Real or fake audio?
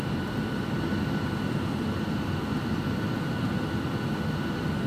real